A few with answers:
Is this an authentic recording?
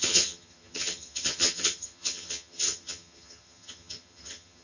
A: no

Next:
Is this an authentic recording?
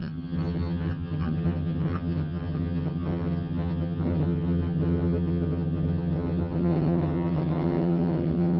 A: no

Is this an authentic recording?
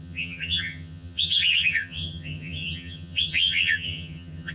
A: no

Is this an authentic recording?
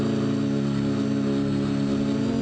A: yes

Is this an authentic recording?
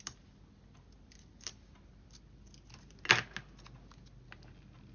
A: yes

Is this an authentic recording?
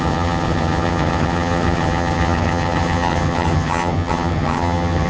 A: no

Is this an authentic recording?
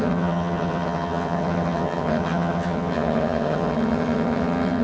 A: no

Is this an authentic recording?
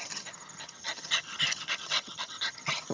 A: no